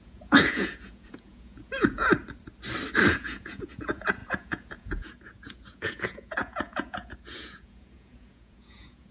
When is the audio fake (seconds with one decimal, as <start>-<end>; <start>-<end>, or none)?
0.0-2.1; 3.1-9.1